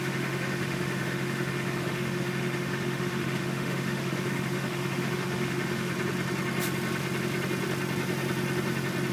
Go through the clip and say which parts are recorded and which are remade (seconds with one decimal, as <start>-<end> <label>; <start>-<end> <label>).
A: 0.0-5.9 remade; 5.9-9.1 recorded